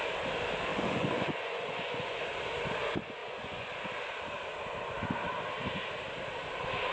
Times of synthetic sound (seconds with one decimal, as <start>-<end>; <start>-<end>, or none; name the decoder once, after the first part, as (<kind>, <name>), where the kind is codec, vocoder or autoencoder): 0.7-2.2 (vocoder, Vocos); 3.2-3.7